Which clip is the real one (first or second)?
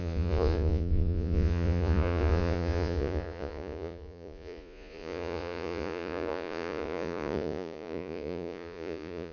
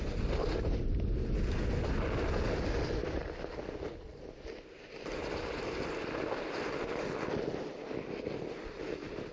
second